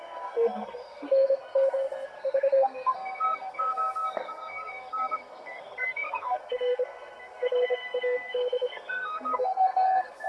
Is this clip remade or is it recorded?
remade